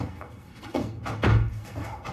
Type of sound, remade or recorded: remade